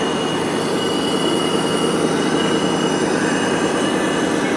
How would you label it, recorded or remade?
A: recorded